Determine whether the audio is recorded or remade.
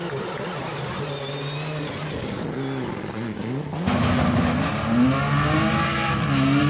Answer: recorded